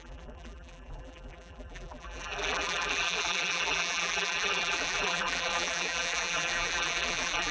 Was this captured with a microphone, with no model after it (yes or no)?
no